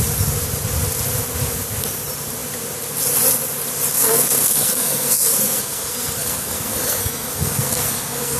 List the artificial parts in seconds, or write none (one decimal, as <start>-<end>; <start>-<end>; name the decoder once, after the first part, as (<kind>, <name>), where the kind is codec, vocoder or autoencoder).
3.9-8.4 (codec, SNAC)